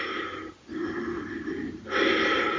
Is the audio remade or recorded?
recorded